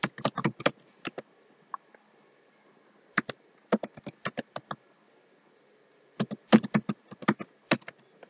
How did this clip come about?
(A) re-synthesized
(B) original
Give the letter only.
B